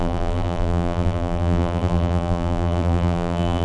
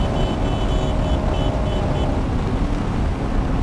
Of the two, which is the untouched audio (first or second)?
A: second